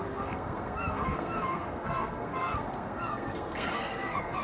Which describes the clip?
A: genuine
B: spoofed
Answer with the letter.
B